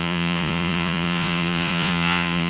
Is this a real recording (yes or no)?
no